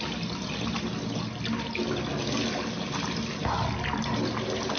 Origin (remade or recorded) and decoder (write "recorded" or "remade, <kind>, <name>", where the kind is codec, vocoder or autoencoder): recorded